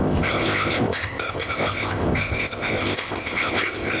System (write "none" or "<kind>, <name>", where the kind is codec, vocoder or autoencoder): codec, ZipCodec